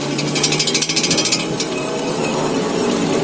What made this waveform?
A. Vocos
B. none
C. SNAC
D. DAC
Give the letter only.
B